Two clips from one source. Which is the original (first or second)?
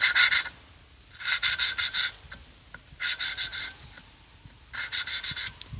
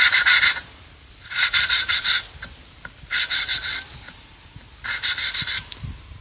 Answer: first